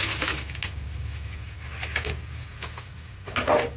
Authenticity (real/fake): real